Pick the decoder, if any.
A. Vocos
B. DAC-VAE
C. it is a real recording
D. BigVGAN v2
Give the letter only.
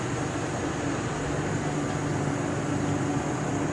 C